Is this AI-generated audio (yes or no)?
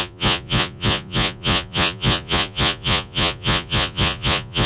yes